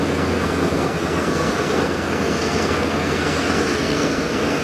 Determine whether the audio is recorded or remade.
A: remade